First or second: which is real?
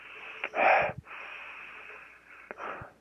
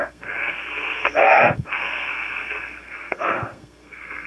first